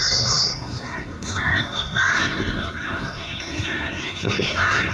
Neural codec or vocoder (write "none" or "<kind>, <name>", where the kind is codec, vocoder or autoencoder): codec, SNAC